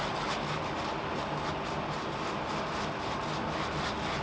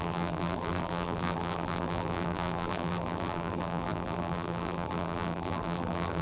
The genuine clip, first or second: first